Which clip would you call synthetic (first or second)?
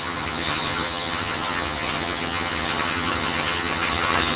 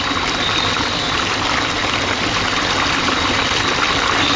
first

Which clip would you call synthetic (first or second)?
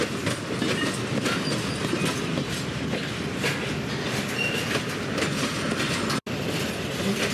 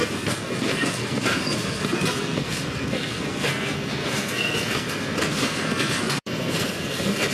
second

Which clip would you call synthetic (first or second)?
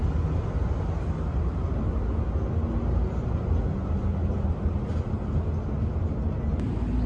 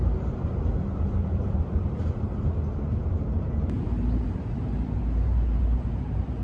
second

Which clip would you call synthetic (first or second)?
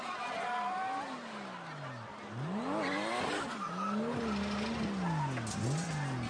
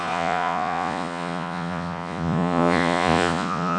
second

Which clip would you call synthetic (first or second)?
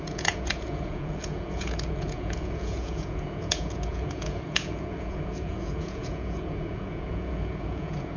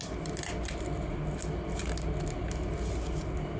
first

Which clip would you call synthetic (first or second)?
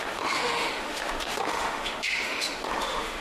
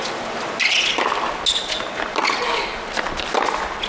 first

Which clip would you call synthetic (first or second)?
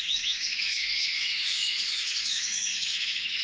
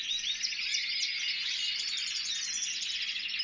first